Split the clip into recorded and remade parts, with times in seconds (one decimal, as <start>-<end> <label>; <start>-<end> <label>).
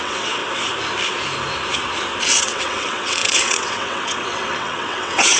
0.0-0.4 remade; 0.4-2.2 recorded; 2.2-5.4 remade